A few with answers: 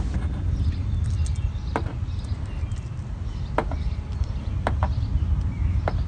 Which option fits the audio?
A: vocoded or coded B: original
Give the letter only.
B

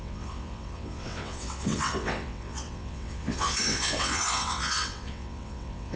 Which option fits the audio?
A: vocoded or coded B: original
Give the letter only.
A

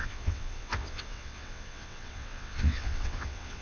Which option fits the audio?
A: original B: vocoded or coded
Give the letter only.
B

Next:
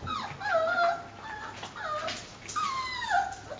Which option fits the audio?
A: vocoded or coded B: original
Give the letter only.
B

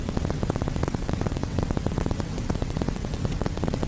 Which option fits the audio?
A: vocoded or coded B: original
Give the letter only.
A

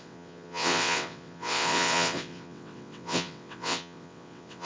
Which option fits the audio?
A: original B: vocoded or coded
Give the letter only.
B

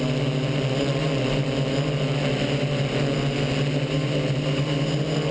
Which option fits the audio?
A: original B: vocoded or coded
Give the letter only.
A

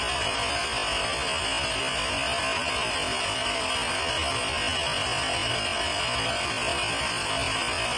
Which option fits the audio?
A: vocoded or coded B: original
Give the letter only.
B